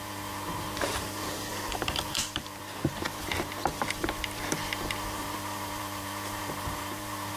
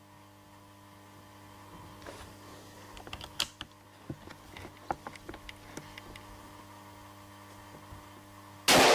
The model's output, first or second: first